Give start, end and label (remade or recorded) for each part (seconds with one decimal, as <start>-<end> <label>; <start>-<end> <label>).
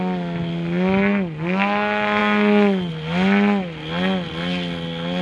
0.0-5.2 recorded